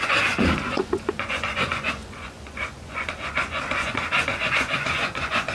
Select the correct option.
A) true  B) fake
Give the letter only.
B